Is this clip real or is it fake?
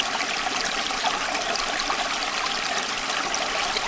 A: real